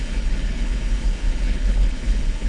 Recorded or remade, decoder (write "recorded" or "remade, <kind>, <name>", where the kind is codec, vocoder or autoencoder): remade, codec, HILCodec